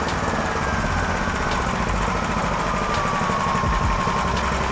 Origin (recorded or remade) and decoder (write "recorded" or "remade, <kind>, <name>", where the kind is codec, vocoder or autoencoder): recorded